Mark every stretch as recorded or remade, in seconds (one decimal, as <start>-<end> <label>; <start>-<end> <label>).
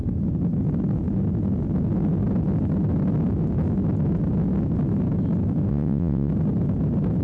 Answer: 0.0-5.7 recorded; 5.7-6.3 remade; 6.3-7.2 recorded